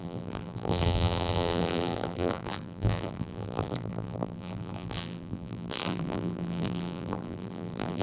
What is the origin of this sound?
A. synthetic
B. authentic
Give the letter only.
A